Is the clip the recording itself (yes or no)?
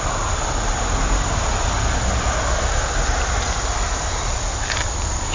yes